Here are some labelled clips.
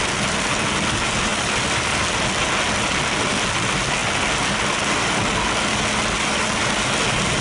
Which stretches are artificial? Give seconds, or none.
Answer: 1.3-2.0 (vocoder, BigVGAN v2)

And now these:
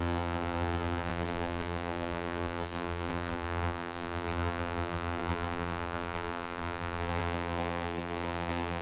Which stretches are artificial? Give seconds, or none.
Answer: 0.0-8.8 (vocoder, BigVGAN v2)

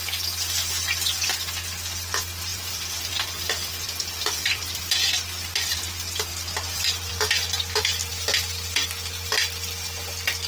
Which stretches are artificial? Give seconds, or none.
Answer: 2.5-4.8 (vocoder, BigVGAN v2); 6.3-7.1

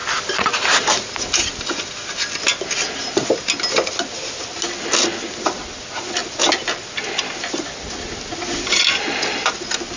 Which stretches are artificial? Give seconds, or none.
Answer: none

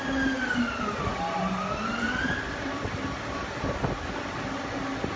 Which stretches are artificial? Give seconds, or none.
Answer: none